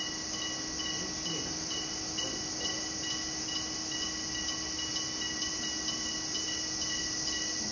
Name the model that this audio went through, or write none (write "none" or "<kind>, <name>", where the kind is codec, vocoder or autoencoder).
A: none